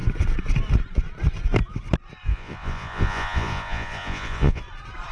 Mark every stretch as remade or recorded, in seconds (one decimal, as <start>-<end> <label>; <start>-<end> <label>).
0.0-2.3 recorded; 2.3-4.6 remade; 4.6-5.1 recorded